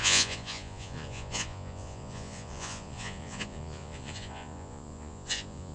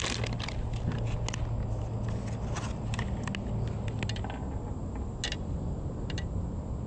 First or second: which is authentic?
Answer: second